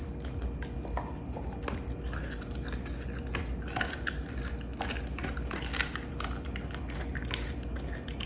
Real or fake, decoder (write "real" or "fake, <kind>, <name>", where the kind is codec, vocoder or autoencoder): real